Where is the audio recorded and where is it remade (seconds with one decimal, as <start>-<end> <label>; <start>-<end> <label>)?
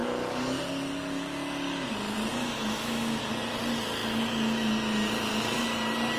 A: 0.0-2.4 recorded; 2.4-3.3 remade; 3.3-6.2 recorded